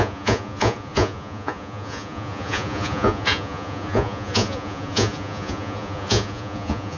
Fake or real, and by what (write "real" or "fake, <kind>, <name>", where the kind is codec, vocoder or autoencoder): fake, vocoder, Vocos